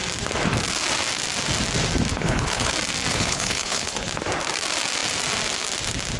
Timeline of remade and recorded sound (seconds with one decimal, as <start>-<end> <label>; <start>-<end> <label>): 0.0-2.1 recorded; 2.1-2.7 remade; 2.7-3.1 recorded; 3.1-4.1 remade; 4.1-6.2 recorded